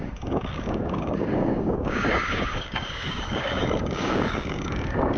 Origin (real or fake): fake